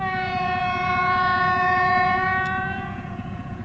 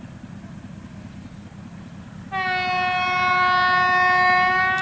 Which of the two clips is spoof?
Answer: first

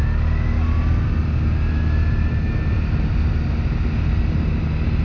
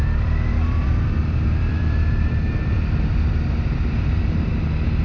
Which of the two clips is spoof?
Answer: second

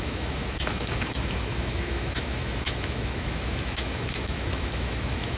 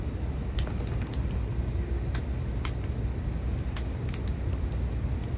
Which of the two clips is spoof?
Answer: first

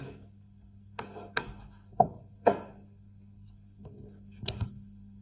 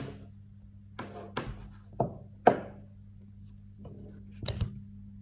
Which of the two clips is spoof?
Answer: first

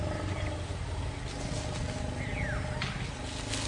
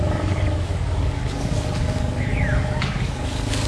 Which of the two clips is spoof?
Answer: second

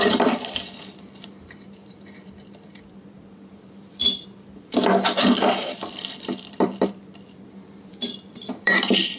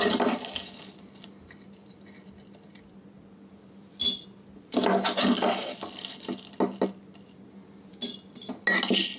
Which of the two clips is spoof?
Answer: first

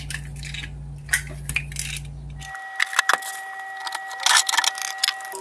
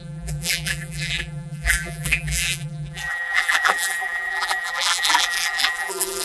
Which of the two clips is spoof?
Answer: second